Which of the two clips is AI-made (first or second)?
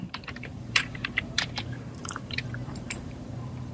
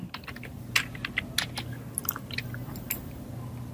first